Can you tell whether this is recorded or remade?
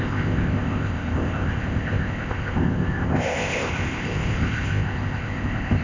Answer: remade